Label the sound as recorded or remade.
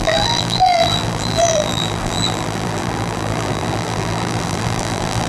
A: remade